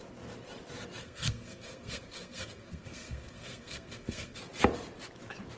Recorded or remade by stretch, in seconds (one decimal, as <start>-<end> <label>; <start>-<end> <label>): 0.0-1.0 recorded; 1.0-4.4 remade; 4.4-5.6 recorded